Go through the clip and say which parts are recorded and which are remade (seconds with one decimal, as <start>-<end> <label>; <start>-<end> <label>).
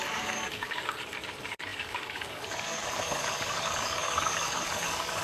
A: 0.0-5.2 remade